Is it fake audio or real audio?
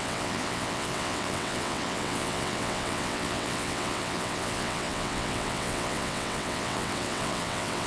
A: fake